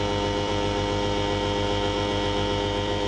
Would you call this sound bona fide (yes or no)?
no